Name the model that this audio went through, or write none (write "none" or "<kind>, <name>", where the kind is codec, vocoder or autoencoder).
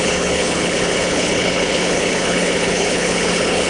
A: codec, HILCodec